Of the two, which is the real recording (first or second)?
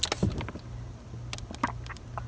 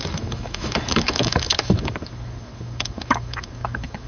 first